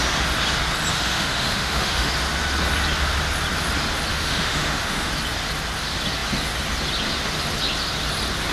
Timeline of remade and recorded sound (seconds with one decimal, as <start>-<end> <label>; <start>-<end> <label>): 0.0-0.9 recorded; 0.9-2.1 remade; 2.1-4.1 recorded; 4.1-5.1 remade; 5.1-8.5 recorded